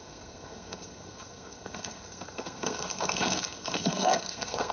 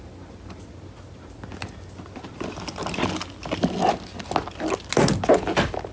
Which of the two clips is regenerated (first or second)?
first